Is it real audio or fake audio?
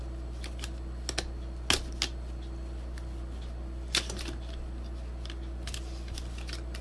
real